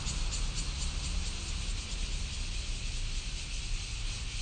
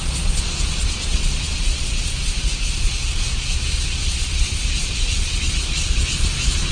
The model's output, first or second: second